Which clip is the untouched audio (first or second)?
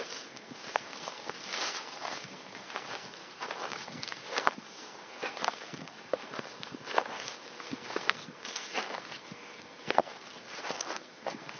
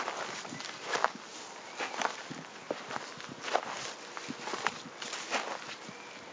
second